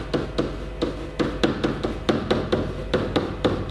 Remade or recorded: recorded